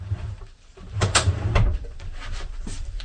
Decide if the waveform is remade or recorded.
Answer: remade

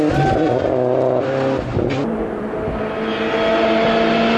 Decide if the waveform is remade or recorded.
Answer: recorded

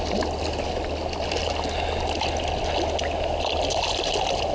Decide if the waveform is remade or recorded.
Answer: recorded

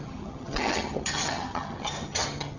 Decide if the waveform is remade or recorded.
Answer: remade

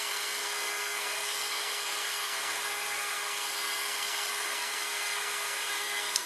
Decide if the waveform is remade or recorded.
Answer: remade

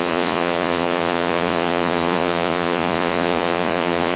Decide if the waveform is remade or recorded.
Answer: remade